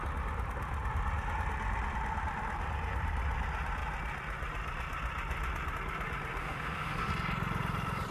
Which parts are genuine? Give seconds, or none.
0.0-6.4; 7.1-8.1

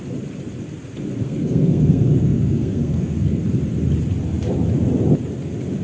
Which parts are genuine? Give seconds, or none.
0.0-1.2; 3.4-5.8